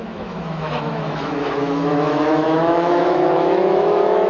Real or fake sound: fake